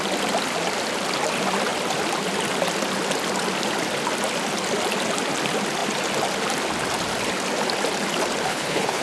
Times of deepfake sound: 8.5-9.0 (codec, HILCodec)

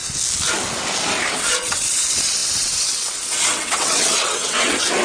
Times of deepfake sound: 1.3-5.0 (vocoder, WaveNeXt)